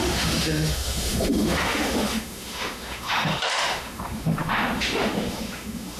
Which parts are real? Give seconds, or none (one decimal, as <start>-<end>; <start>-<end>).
none